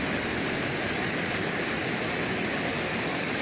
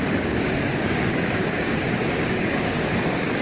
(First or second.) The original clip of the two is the first